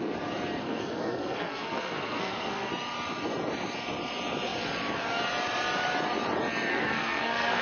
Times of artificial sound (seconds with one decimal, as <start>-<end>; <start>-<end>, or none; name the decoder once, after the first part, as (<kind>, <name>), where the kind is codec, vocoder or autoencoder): 0.6-2.7 (codec, SNAC); 6.7-7.6